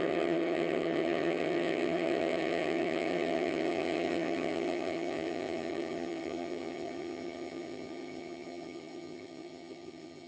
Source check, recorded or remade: remade